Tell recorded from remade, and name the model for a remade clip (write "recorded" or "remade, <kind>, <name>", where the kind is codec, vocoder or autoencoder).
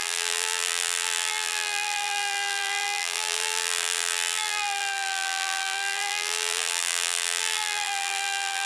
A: remade, vocoder, BigVGAN v2